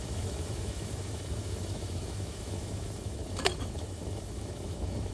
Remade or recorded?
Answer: remade